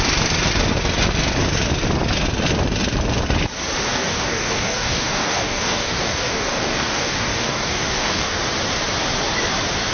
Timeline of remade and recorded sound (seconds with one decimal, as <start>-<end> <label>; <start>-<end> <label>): 0.0-3.9 recorded; 3.9-8.4 remade; 8.4-9.9 recorded